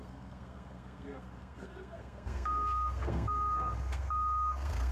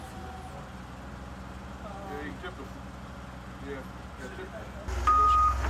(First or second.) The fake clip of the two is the first